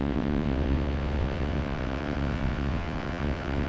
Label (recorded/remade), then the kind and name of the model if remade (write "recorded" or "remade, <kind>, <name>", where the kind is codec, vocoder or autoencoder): remade, vocoder, WaveNeXt